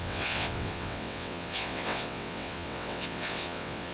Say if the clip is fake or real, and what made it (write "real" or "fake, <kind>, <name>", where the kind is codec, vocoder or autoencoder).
fake, vocoder, WaveNeXt